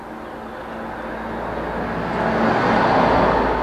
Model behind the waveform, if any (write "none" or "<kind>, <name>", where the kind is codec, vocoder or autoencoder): none